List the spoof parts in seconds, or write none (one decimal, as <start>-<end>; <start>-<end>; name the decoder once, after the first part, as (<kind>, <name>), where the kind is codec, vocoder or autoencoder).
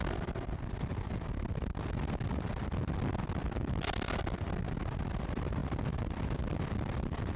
none